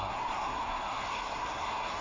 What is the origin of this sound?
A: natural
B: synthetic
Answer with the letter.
B